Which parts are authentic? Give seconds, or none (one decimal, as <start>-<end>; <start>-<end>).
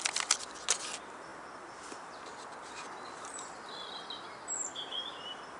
0.0-5.6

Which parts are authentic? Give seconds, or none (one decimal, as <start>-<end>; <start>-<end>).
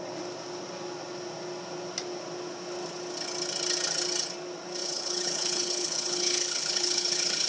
0.0-4.8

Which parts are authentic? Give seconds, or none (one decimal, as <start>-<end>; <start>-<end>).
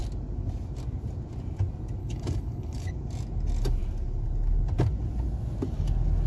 0.0-2.0; 2.9-6.3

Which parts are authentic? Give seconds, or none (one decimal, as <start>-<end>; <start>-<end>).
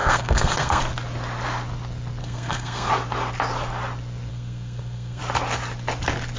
0.8-2.2; 2.9-4.3; 5.2-6.4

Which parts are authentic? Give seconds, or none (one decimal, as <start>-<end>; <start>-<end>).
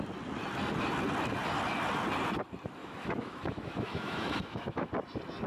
0.0-2.8; 4.9-5.5